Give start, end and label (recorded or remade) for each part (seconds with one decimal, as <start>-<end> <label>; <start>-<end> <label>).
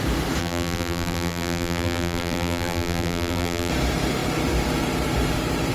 0.0-0.4 recorded; 0.4-3.7 remade; 3.7-5.7 recorded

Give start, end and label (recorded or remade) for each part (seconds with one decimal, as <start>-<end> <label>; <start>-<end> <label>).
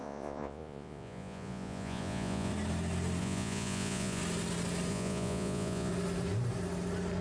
0.0-2.5 remade; 2.5-3.2 recorded; 3.2-4.2 remade; 4.2-4.9 recorded; 4.9-5.9 remade; 5.9-7.2 recorded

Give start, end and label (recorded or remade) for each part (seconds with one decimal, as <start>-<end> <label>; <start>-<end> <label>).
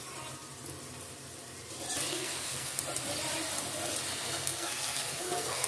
0.0-2.1 recorded; 2.1-2.8 remade; 2.8-4.1 recorded; 4.1-5.7 remade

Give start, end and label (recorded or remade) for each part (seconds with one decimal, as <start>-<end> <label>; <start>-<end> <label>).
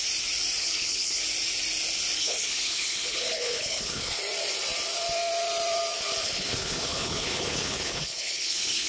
0.0-0.6 recorded; 0.6-1.2 remade; 1.2-2.2 recorded; 2.2-4.2 remade; 4.2-6.2 recorded; 6.2-8.9 remade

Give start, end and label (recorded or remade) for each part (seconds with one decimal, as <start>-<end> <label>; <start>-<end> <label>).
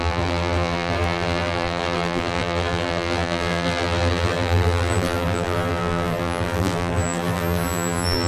0.0-8.3 remade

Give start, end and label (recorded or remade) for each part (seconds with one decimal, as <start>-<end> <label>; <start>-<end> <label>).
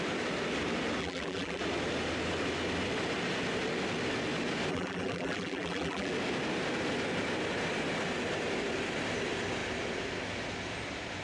0.0-1.0 recorded; 1.0-1.6 remade; 1.6-4.7 recorded; 4.7-6.1 remade; 6.1-11.2 recorded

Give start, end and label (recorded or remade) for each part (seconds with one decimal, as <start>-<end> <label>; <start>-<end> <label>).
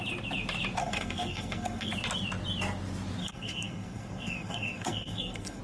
0.0-0.8 recorded; 0.8-1.9 remade; 1.9-3.2 recorded; 3.2-5.6 remade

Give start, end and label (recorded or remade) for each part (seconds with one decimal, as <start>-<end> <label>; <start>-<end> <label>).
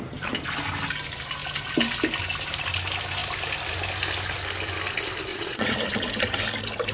0.0-5.3 recorded; 5.3-6.1 remade; 6.1-6.9 recorded